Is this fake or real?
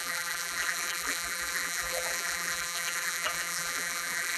fake